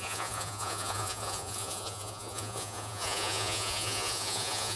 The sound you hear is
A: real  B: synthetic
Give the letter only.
B